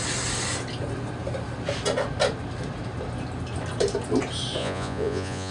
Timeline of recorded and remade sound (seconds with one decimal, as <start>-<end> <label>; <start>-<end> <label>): 0.0-4.6 recorded; 4.6-5.5 remade